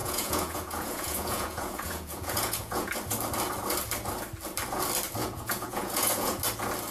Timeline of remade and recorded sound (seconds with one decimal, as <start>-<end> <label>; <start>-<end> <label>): 0.0-2.9 remade; 2.9-5.2 recorded; 5.2-6.4 remade; 6.4-6.9 recorded